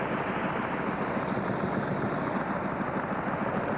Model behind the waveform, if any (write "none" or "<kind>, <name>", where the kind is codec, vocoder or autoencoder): none